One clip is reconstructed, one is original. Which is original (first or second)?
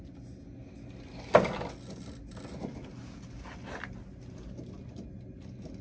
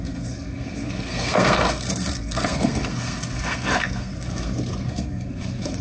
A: first